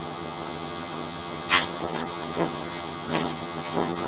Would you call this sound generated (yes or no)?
yes